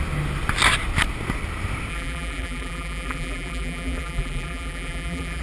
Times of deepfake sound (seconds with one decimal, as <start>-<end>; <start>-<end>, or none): 1.9-5.4